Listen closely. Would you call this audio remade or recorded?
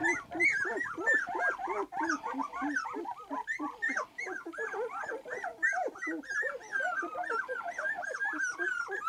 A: recorded